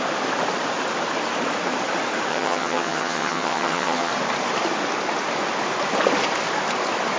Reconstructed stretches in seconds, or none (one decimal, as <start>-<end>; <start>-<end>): 2.3-4.1